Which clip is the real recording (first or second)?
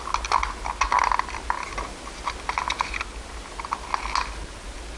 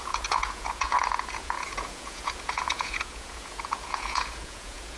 first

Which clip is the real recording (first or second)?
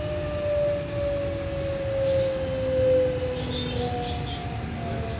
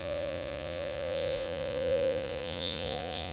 first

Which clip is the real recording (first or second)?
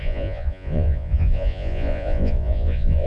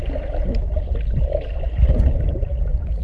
second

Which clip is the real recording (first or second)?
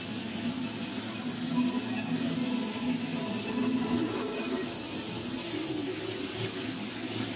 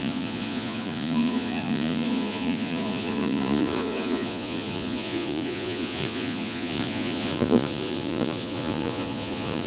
first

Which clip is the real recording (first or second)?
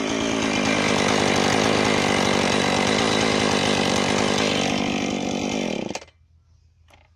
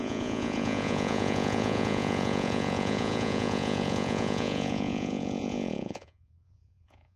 first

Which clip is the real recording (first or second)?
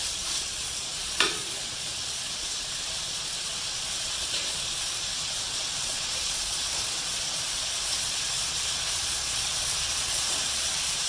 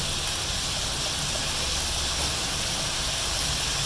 second